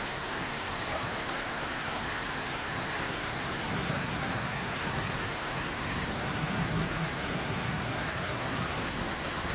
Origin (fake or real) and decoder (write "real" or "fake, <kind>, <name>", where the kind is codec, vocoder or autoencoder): fake, codec, SNAC